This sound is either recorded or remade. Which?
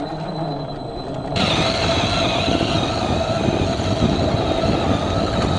recorded